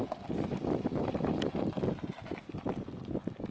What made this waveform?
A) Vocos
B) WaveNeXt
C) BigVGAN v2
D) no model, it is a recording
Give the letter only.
D